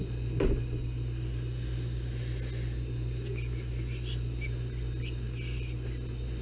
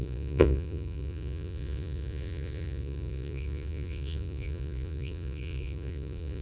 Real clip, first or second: first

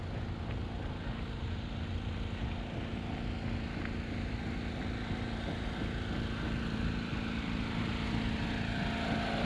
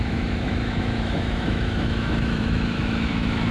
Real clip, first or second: first